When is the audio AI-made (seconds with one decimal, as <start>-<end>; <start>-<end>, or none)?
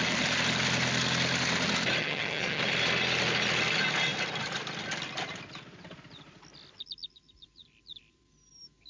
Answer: 2.0-2.6